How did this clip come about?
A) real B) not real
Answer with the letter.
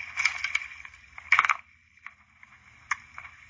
A